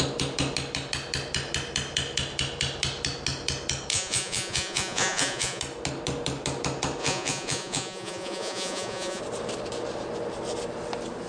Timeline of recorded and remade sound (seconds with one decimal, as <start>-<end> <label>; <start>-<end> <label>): 0.0-3.9 recorded; 3.9-5.6 remade; 5.6-7.0 recorded; 7.0-9.2 remade; 9.2-11.3 recorded